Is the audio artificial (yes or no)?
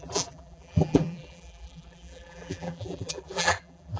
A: yes